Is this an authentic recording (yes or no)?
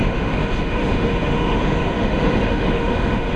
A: no